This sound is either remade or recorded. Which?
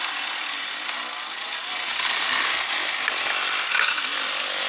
recorded